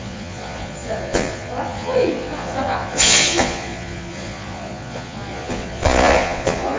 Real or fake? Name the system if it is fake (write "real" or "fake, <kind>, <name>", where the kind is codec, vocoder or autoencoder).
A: fake, vocoder, Vocos